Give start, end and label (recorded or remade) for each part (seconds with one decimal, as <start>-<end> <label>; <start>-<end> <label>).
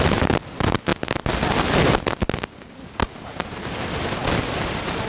0.0-5.1 recorded